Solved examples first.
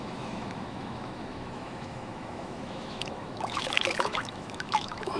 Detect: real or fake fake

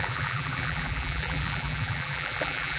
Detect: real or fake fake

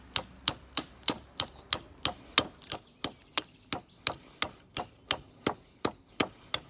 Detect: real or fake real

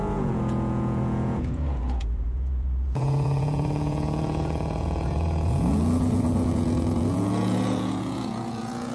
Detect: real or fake fake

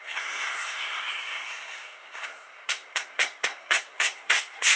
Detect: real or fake fake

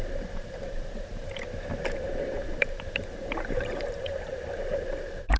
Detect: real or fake fake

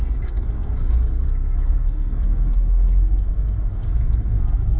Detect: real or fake fake